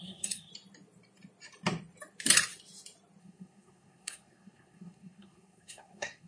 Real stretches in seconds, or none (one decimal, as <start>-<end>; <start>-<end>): 0.5-3.2